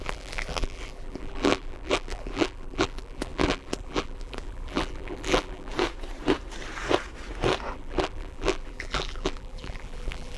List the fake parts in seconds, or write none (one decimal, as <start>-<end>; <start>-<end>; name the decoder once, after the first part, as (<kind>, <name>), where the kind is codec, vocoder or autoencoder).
0.0-5.7 (vocoder, BigVGAN v2); 7.7-10.4